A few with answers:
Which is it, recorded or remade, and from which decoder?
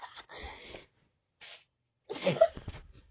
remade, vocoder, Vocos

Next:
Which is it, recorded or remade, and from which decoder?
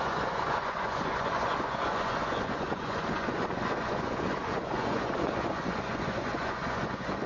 remade, vocoder, Vocos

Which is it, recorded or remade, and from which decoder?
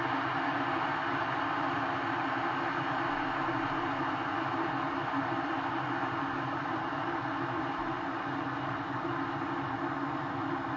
recorded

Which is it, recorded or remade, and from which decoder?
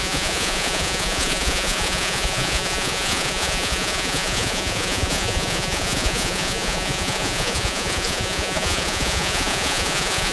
remade, vocoder, Vocos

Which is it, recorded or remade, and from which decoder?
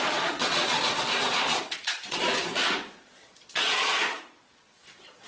remade, vocoder, Vocos